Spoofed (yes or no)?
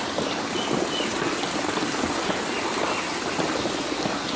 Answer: no